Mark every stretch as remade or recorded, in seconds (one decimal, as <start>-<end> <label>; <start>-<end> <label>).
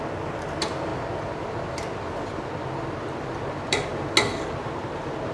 0.0-5.3 recorded